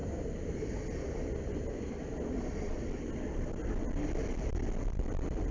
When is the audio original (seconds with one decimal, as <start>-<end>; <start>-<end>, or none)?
0.0-5.5